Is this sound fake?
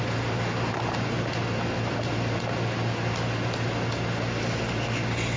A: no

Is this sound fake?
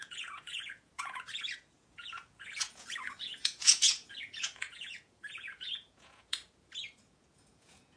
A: yes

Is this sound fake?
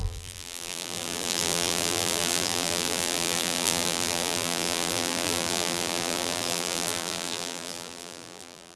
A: yes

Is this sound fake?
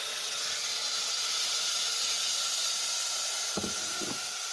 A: no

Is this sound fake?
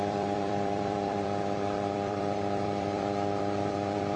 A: yes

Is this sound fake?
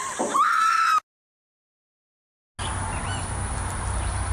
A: no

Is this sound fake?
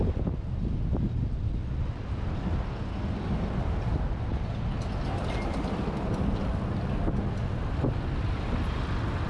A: no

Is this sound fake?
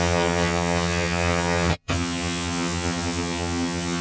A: yes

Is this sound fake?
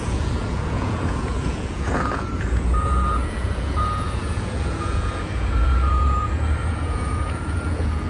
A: yes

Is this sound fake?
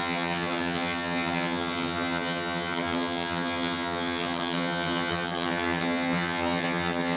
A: yes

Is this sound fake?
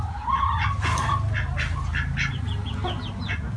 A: no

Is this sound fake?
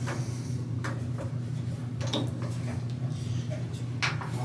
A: no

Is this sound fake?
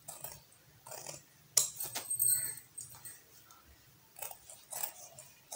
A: no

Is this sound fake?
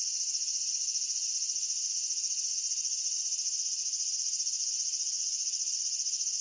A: yes